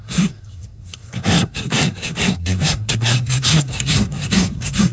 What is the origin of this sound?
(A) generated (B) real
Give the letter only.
A